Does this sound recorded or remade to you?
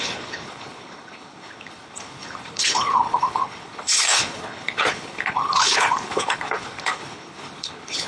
remade